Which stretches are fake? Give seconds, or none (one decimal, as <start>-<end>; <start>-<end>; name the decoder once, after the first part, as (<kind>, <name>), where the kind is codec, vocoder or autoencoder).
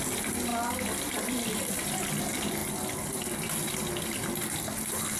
none